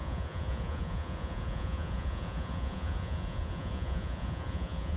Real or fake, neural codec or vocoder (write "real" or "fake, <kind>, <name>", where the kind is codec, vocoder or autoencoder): fake, vocoder, Vocos